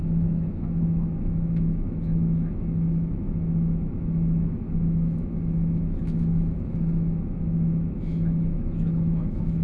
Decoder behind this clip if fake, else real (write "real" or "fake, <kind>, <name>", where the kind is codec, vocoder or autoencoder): fake, autoencoder, DAC-VAE